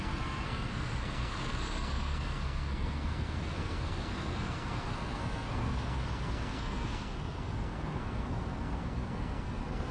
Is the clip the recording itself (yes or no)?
no